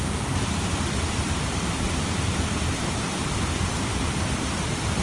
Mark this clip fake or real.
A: real